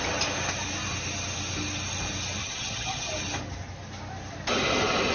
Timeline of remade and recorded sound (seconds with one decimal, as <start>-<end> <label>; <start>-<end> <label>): 0.0-2.4 recorded; 2.4-3.1 remade; 3.1-5.1 recorded